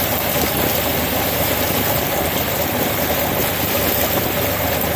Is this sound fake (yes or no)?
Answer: no